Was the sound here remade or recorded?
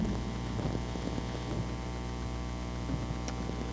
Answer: recorded